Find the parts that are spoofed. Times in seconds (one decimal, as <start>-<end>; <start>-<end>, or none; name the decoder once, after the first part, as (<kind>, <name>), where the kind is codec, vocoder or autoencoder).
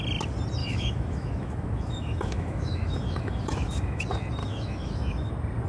0.6-4.0 (autoencoder, DAC-VAE); 4.4-5.3